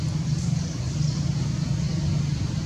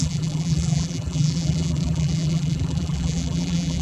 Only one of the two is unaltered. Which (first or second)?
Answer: first